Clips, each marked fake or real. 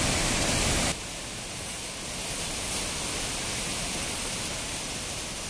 real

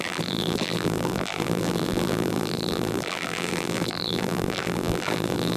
fake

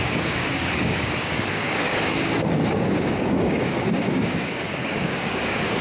fake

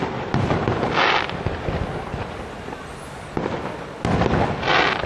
real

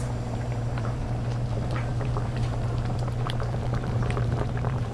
fake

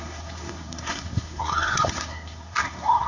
fake